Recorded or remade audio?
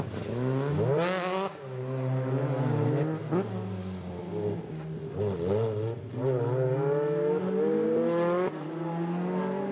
recorded